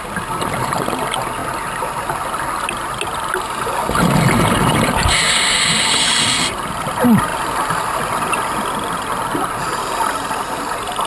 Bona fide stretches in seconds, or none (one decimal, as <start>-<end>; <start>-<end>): 0.0-11.1